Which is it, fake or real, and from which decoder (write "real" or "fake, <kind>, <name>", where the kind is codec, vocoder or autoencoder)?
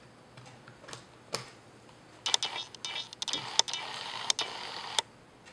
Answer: real